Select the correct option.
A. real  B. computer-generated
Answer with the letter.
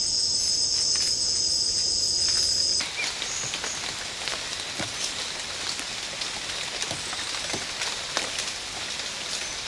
A